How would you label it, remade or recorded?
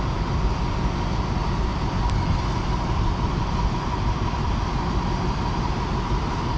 recorded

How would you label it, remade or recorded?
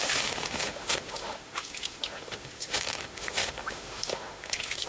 remade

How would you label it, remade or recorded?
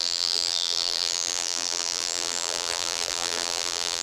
remade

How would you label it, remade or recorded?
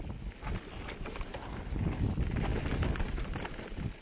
recorded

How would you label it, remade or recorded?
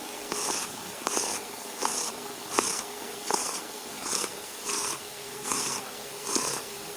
remade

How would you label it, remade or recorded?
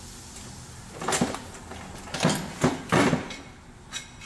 recorded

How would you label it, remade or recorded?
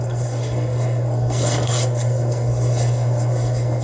remade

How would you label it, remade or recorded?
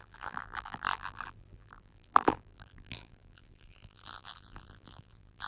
remade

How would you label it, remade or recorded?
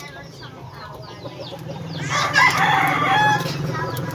remade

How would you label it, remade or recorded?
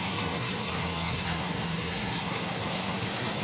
remade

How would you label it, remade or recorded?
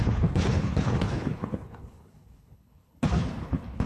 remade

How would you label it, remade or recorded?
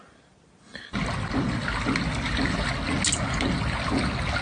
recorded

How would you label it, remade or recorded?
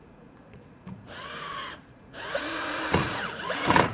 remade